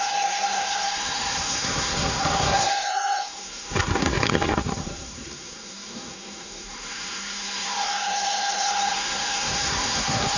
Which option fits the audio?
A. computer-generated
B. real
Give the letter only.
A